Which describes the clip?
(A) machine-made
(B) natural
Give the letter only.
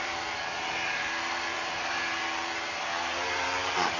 A